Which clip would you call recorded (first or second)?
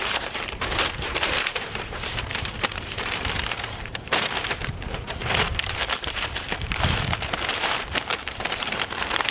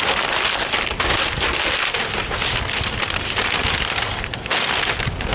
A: second